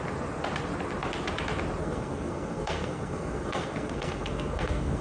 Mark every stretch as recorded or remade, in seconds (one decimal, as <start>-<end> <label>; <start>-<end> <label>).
0.0-1.8 recorded; 1.8-5.0 remade

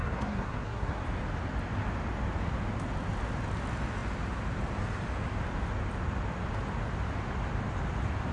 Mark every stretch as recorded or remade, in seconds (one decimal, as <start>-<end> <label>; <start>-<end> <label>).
0.0-1.0 remade; 1.0-8.3 recorded

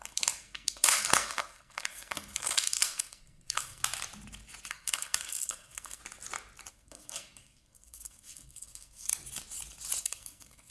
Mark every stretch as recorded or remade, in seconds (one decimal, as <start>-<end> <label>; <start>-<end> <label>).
0.0-3.8 remade; 3.8-4.7 recorded; 4.7-6.0 remade; 6.0-6.7 recorded; 6.7-9.1 remade; 9.1-10.0 recorded; 10.0-10.7 remade

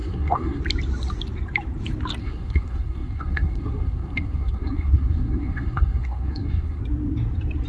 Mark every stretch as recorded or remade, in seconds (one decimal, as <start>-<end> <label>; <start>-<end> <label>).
0.0-0.6 remade; 0.6-2.2 recorded; 2.2-6.8 remade; 6.8-7.7 recorded

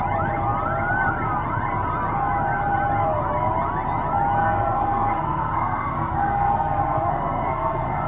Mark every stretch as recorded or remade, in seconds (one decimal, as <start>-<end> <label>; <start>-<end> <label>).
0.0-4.4 recorded; 4.4-8.1 remade